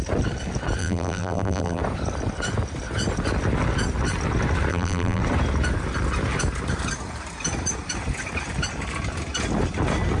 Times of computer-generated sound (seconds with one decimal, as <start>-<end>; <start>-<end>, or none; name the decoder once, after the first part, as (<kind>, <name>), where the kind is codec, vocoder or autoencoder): 0.8-1.8 (vocoder, BigVGAN v2); 4.7-5.2